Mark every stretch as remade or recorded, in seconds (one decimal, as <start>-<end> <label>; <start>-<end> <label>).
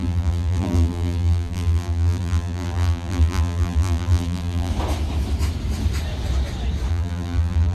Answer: 0.0-4.7 remade; 4.7-6.9 recorded; 6.9-7.7 remade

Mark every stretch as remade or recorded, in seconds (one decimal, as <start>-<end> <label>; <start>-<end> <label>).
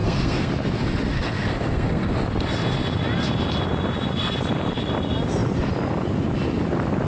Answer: 0.0-0.5 remade; 0.5-1.1 recorded; 1.1-2.1 remade; 2.1-7.1 recorded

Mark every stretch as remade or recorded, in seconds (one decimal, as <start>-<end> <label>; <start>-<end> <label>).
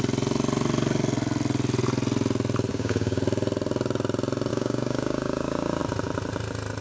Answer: 0.0-2.7 recorded; 2.7-3.2 remade; 3.2-4.5 recorded; 4.5-5.8 remade; 5.8-6.8 recorded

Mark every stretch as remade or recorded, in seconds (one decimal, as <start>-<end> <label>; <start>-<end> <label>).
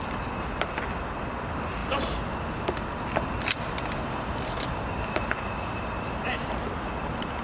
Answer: 0.0-7.4 recorded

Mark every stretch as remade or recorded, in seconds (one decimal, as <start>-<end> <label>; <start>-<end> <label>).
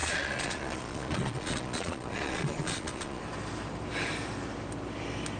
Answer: 0.0-3.2 remade; 3.2-5.4 recorded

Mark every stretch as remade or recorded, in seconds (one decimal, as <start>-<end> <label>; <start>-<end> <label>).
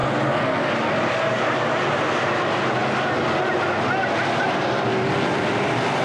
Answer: 0.0-6.0 recorded